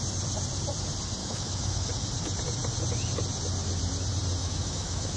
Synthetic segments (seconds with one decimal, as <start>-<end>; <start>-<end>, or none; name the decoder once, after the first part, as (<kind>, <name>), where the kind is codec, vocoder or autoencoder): 1.2-1.9 (autoencoder, DAC-VAE); 4.4-5.2